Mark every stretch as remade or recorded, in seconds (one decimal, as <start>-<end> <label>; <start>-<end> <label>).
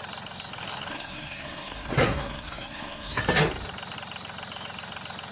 0.0-0.9 recorded; 0.9-3.2 remade; 3.2-5.3 recorded